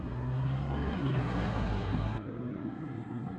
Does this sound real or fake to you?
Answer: fake